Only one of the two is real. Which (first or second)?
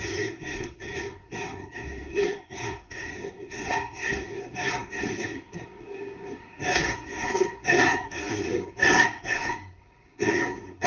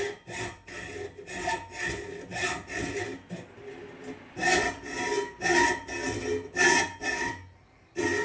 second